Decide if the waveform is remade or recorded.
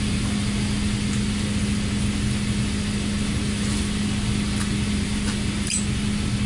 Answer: recorded